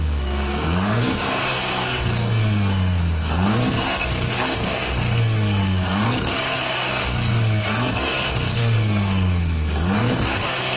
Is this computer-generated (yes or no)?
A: yes